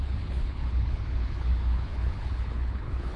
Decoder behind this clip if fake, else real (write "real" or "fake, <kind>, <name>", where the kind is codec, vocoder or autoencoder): fake, codec, HILCodec